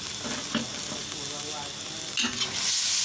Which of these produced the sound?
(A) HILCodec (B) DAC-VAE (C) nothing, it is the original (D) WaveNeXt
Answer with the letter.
C